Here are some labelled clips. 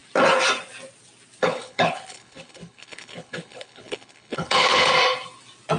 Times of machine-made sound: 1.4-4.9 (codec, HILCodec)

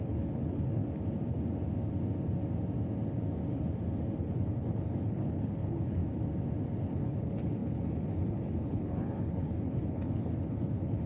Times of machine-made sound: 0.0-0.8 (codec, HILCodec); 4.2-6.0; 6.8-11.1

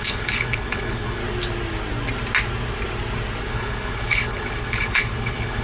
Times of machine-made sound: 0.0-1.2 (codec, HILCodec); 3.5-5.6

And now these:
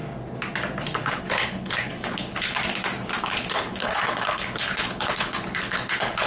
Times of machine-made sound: 0.8-2.6 (codec, HILCodec); 3.2-6.3

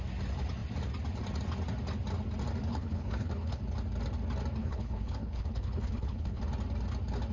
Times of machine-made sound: 2.7-3.6 (codec, HILCodec); 4.6-6.4

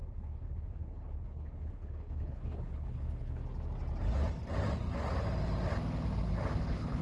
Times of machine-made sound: 0.0-3.4 (codec, HILCodec); 6.6-7.0